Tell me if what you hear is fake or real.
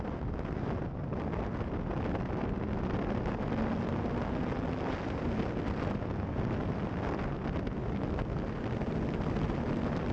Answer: real